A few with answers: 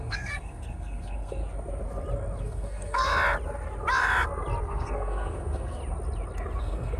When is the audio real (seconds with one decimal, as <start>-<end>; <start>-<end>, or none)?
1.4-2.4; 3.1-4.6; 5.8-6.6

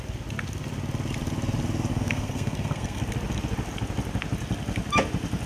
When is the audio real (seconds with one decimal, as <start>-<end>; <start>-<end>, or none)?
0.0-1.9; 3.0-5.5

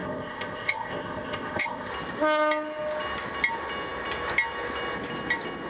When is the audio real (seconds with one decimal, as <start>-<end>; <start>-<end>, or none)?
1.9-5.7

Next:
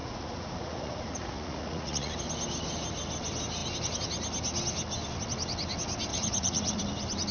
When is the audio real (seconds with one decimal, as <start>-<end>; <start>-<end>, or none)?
2.1-6.1; 6.8-7.3

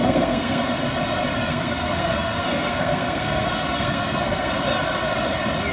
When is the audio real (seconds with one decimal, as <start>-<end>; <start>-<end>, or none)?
0.6-1.4; 4.5-5.7

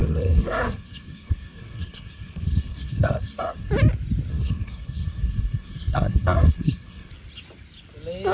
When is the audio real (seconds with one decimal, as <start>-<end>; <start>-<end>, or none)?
3.7-4.3; 7.1-8.3

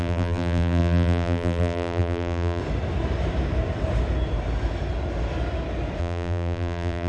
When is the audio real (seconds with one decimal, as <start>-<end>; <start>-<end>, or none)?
2.6-6.0